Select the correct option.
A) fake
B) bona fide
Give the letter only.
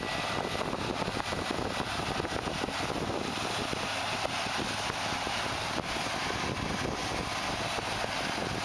B